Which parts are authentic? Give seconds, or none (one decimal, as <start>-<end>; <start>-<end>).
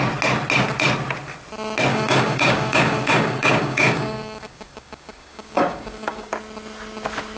0.0-1.9; 6.3-7.4